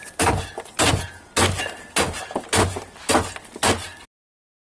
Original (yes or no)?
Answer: yes